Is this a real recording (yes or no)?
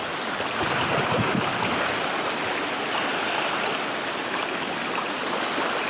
yes